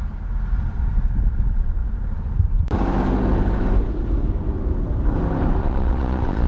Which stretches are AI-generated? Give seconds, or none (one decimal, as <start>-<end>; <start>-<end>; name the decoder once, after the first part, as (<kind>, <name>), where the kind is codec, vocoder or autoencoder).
5.6-6.5 (vocoder, Vocos)